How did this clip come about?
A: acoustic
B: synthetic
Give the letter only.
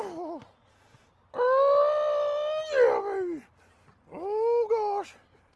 A